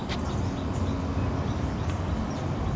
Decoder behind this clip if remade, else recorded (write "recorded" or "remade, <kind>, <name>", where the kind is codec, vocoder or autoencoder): recorded